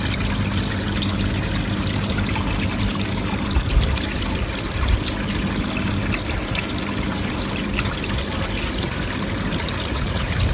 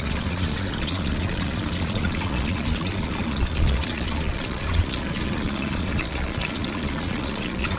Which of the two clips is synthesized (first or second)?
second